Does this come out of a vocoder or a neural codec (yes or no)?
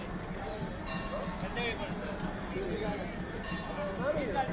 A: no